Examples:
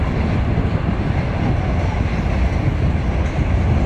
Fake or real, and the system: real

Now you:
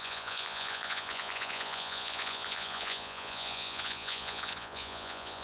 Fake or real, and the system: fake, vocoder, Vocos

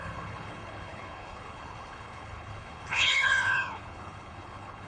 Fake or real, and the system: fake, codec, HILCodec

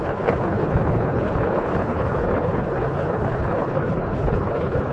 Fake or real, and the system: fake, codec, HILCodec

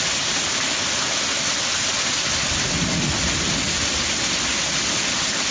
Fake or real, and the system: real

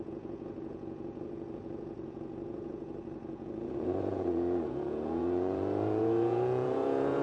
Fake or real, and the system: fake, vocoder, Vocos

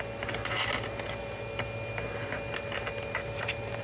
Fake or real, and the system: real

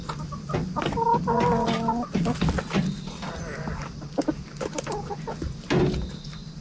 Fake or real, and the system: real